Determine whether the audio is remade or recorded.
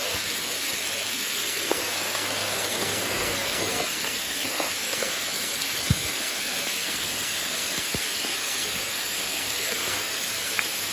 remade